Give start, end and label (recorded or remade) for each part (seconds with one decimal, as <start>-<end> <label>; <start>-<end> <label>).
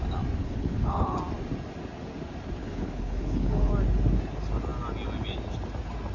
0.0-0.4 recorded; 0.4-1.2 remade; 1.2-2.6 recorded; 2.6-3.7 remade; 3.7-6.1 recorded